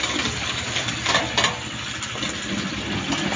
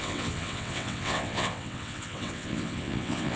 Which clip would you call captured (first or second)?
first